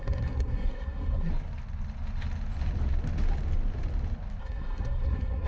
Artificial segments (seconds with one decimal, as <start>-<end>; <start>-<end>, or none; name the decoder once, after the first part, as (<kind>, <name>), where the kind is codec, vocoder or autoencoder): 0.0-1.3 (codec, SNAC); 4.4-5.5